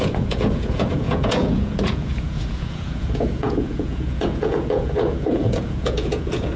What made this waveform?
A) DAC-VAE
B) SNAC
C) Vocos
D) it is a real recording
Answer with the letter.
C